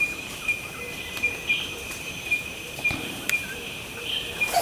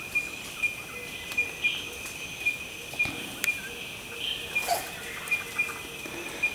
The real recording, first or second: second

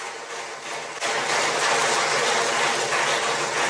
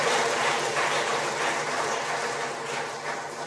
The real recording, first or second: first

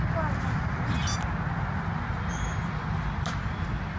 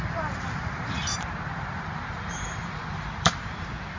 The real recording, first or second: first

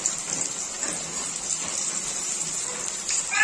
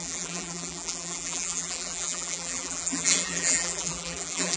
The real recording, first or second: first